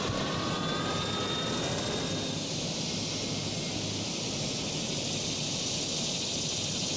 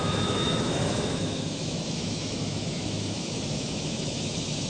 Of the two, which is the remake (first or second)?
second